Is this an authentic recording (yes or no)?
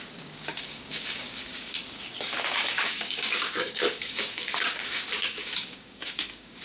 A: no